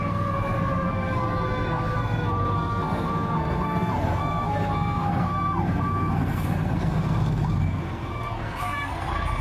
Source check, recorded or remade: remade